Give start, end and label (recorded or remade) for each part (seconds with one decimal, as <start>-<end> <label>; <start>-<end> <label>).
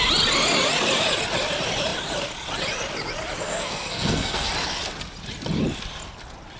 0.0-3.4 recorded; 3.4-4.5 remade; 4.5-6.6 recorded